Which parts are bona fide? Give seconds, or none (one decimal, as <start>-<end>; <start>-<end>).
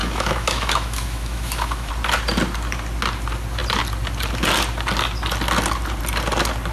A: 1.9-6.7